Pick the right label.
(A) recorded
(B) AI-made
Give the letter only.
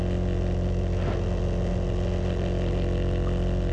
A